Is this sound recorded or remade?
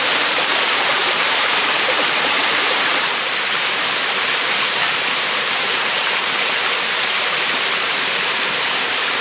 remade